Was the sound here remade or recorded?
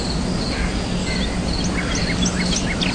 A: recorded